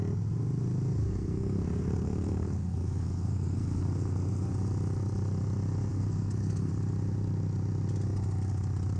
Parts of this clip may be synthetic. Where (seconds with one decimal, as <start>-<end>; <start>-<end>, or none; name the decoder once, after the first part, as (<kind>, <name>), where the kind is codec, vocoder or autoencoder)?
1.0-4.5 (codec, SNAC); 5.9-6.7